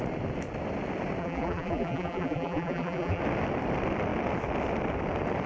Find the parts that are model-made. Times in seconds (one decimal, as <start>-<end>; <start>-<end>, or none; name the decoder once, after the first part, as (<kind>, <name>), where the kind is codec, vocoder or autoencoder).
1.2-3.2 (vocoder, BigVGAN v2)